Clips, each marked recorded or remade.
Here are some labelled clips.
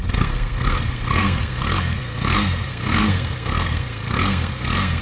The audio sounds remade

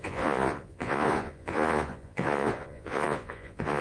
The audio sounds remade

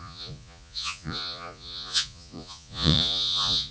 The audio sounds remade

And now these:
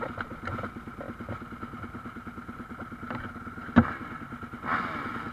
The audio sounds recorded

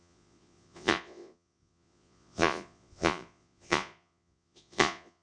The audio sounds remade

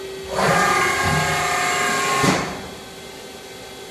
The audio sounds recorded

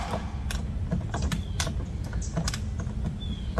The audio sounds recorded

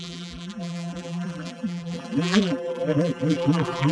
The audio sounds remade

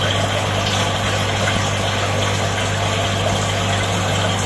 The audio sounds recorded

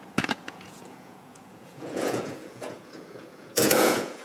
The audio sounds remade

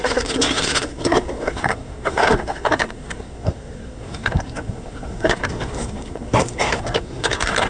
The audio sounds remade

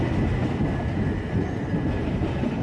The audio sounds recorded